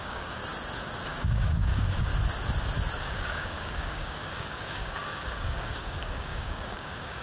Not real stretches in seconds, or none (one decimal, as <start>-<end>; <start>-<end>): 0.0-0.4; 1.1-2.1; 3.0-7.2